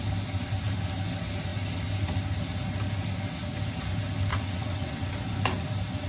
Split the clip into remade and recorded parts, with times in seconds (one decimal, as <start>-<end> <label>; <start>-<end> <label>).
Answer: 0.0-4.3 recorded; 4.3-5.1 remade; 5.1-6.1 recorded